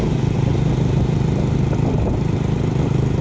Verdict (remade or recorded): recorded